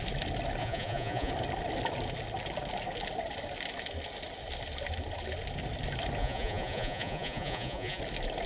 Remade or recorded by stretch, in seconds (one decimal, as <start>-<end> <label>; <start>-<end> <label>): 0.0-0.6 recorded; 0.6-1.3 remade; 1.3-6.2 recorded; 6.2-8.0 remade; 8.0-8.5 recorded